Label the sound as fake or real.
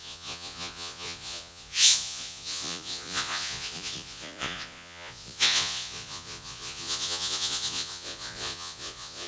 fake